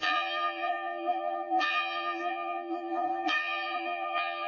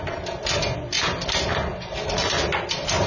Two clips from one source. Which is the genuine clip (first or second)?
second